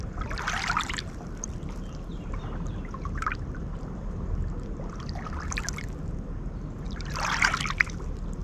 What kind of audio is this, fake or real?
fake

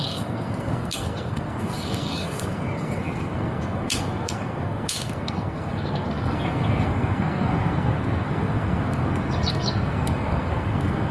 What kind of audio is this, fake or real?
fake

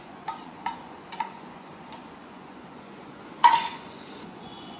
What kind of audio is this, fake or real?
fake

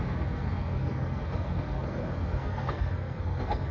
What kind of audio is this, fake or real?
fake